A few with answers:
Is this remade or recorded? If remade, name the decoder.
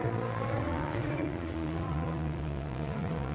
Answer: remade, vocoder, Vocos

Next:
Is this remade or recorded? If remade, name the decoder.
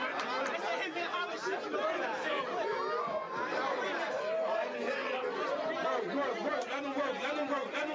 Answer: recorded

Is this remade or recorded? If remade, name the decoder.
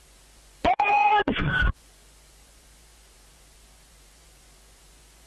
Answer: remade, vocoder, Vocos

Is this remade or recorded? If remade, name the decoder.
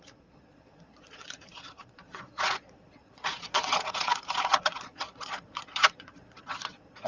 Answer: remade, vocoder, Vocos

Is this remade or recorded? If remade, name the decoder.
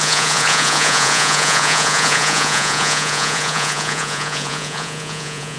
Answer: remade, vocoder, Vocos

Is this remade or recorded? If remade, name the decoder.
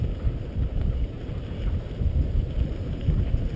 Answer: recorded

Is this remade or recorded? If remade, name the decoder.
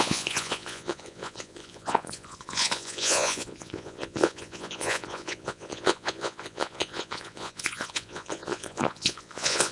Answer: remade, vocoder, Vocos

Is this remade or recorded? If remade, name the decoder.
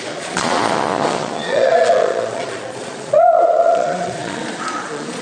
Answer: remade, vocoder, Vocos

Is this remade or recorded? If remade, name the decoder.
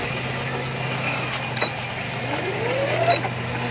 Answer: recorded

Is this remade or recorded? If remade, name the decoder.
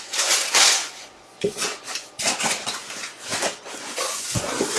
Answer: remade, vocoder, Vocos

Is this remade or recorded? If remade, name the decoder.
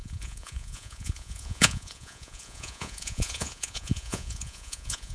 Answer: remade, vocoder, Vocos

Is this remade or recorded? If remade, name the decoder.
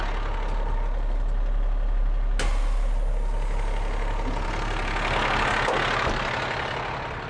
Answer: recorded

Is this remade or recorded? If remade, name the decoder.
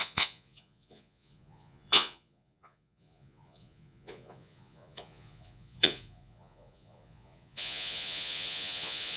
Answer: remade, vocoder, Vocos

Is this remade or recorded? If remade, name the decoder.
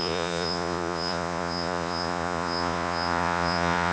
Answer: remade, vocoder, Vocos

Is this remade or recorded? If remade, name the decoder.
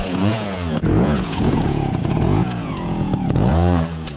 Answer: remade, vocoder, Vocos